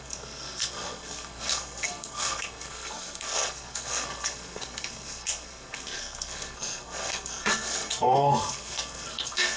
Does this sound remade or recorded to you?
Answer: remade